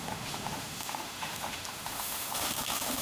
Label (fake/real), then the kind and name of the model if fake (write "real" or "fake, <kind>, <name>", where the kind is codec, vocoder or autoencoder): fake, autoencoder, DAC-VAE